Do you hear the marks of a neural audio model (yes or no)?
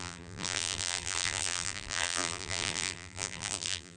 yes